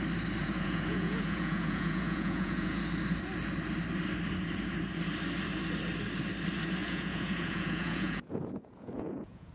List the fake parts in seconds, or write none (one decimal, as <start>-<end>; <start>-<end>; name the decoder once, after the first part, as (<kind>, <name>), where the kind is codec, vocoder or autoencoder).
0.4-2.8 (vocoder, Vocos); 6.8-9.5